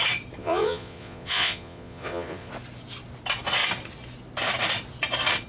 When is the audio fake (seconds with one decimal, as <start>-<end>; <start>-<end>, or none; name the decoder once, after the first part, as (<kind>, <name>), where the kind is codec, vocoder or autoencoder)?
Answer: 0.4-2.5 (vocoder, Vocos)